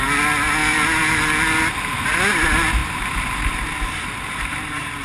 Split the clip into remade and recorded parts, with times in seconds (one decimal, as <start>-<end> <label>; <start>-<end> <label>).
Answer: 0.0-2.8 recorded; 2.8-5.0 remade